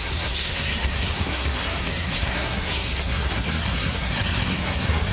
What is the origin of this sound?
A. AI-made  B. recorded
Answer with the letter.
A